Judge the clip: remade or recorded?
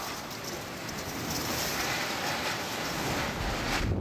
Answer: recorded